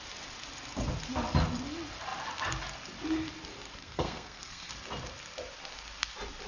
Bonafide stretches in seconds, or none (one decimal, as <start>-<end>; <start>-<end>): 0.0-3.8; 4.7-6.5